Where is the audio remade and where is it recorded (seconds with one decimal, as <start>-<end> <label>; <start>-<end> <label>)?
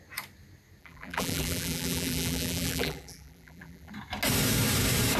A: 0.0-0.8 recorded; 0.8-3.9 remade; 3.9-5.2 recorded